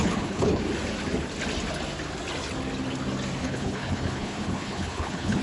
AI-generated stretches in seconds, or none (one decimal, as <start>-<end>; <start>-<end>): 0.0-0.6; 3.4-5.4